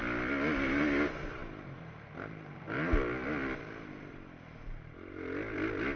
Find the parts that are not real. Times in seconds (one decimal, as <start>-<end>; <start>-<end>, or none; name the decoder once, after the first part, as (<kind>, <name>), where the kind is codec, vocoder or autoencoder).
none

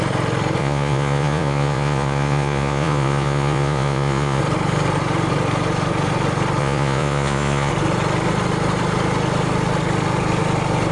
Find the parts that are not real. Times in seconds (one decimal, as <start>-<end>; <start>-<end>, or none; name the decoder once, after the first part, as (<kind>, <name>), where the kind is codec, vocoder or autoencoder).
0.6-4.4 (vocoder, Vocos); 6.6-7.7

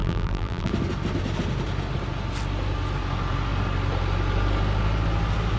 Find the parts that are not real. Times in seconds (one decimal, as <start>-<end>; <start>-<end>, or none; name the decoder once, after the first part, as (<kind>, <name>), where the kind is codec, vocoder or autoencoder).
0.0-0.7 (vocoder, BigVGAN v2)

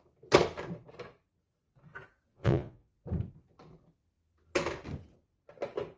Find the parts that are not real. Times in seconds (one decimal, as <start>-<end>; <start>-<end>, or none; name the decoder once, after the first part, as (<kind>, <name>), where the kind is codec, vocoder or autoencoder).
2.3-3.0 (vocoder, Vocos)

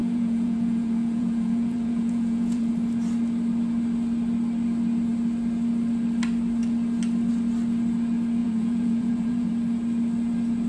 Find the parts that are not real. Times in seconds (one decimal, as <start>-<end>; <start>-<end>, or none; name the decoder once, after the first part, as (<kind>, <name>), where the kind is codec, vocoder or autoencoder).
0.0-2.7 (vocoder, Vocos); 8.4-9.5